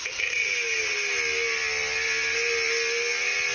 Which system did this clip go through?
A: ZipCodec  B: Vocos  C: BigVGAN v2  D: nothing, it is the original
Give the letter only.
D